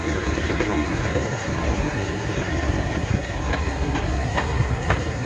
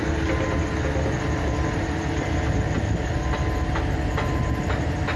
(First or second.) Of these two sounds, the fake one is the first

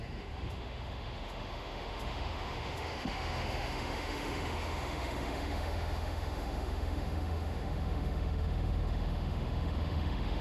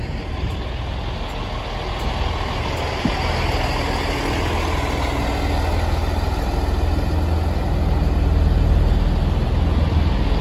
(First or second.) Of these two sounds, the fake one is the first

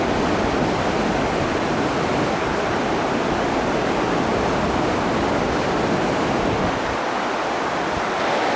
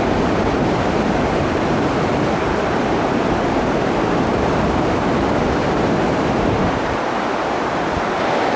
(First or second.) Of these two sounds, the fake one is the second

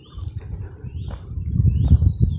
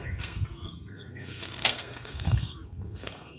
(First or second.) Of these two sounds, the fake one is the second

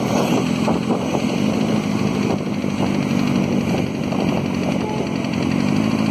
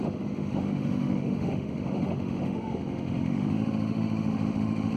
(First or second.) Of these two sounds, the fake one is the second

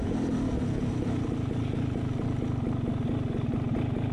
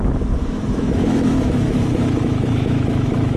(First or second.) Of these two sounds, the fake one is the second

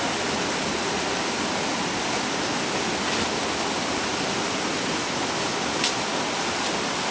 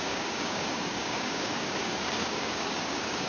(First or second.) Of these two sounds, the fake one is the second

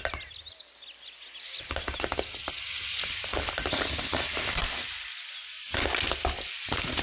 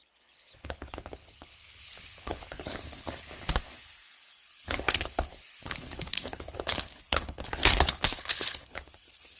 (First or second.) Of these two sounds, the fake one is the second